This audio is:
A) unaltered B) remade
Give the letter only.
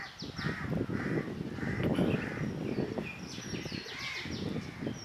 A